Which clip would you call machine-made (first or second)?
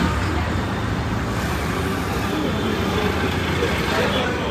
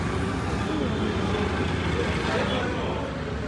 first